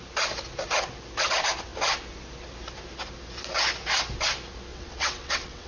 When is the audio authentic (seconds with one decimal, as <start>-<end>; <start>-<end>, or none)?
0.0-4.7